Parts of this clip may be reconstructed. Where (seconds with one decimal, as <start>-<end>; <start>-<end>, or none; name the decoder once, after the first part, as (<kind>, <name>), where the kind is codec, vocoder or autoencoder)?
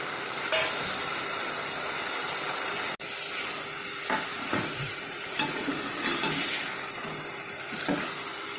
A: 4.3-5.8 (vocoder, Vocos)